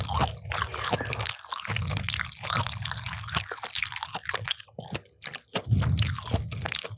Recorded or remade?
recorded